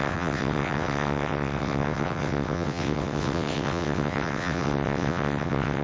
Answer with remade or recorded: remade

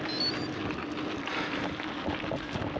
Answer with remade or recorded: recorded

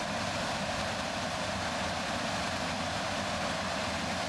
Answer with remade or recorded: recorded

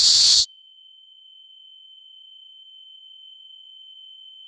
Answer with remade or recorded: remade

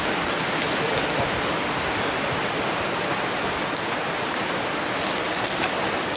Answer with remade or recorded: recorded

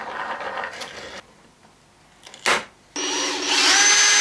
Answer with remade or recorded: recorded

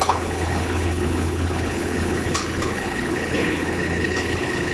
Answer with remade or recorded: remade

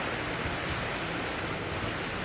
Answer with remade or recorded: recorded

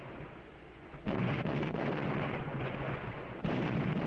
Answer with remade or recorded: remade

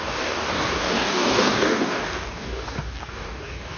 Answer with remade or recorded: remade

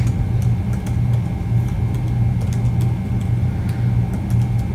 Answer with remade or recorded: recorded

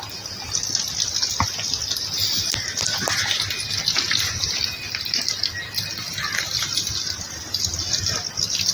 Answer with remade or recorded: recorded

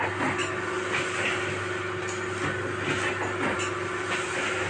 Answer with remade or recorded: recorded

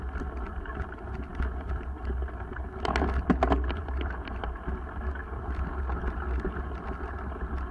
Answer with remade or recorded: recorded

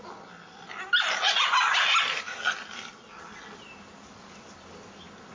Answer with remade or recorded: recorded